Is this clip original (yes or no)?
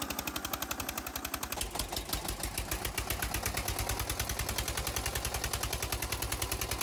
yes